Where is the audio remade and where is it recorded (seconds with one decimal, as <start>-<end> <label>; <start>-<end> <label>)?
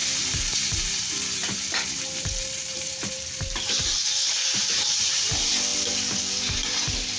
0.0-7.2 remade